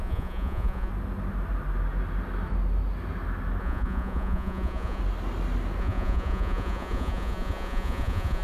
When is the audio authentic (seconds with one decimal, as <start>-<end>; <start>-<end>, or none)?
0.9-3.6; 5.0-5.8

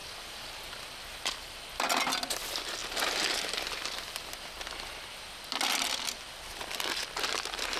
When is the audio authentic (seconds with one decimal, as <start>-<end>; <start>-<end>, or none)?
0.0-7.8

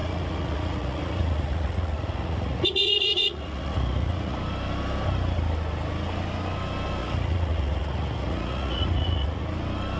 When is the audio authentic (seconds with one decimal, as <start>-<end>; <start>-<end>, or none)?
4.4-7.0; 9.4-10.0

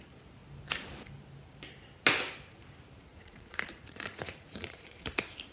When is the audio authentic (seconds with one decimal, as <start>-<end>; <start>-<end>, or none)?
0.0-3.1; 5.1-5.5

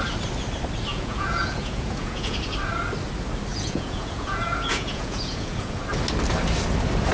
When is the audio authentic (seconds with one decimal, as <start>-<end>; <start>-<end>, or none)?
0.0-0.9; 2.4-3.5; 5.8-7.1

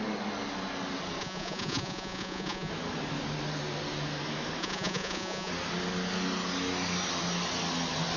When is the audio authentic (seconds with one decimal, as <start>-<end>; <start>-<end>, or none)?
0.0-1.2; 2.7-4.6; 5.5-8.2